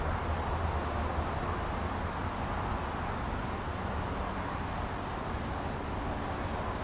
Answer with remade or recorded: recorded